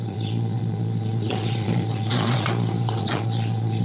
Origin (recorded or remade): remade